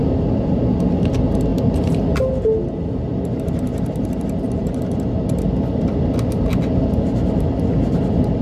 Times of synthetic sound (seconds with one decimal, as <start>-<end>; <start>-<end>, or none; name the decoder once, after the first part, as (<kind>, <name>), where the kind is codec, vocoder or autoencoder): 3.7-4.8 (vocoder, BigVGAN v2)